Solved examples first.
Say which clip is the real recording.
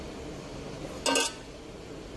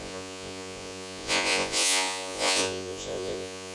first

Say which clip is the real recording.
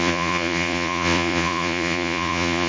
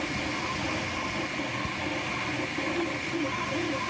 second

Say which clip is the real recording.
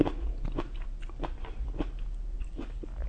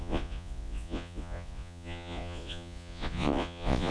first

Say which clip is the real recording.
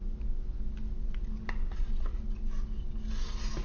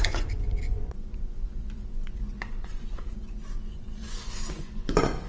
first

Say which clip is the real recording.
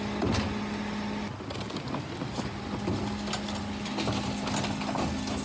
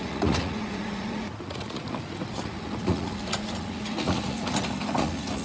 first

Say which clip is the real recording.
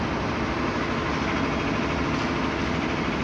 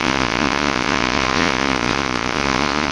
first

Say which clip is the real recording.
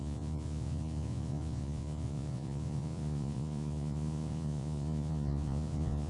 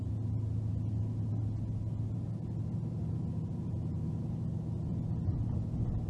second